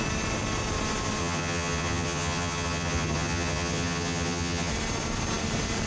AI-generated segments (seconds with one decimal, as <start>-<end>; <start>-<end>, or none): 1.2-4.7